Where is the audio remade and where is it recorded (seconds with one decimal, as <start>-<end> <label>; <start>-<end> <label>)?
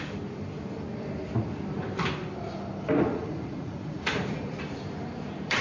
0.0-3.1 recorded; 3.1-4.6 remade; 4.6-5.6 recorded